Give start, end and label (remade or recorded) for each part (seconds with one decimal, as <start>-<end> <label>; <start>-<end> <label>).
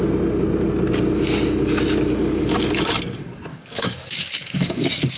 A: 0.0-3.5 recorded; 3.5-5.2 remade